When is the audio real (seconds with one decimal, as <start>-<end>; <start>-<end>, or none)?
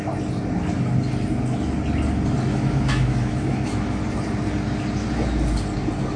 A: 0.0-2.5; 4.0-6.2